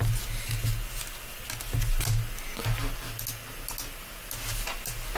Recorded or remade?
recorded